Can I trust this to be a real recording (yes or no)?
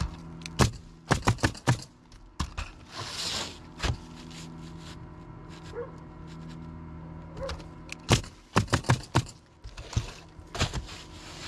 yes